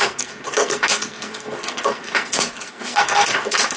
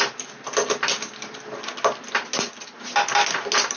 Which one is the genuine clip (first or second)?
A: second